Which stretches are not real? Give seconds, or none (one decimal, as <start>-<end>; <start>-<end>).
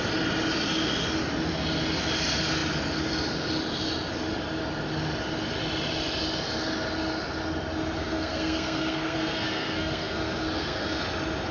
8.0-11.0